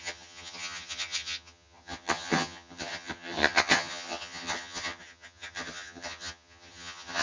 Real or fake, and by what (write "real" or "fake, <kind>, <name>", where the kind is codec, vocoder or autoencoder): fake, vocoder, HiFi-GAN